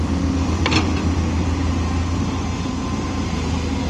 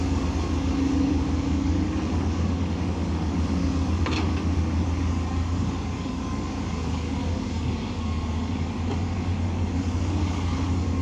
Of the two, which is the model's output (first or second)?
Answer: second